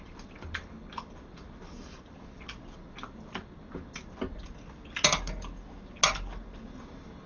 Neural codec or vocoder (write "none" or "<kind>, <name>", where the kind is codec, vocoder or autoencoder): none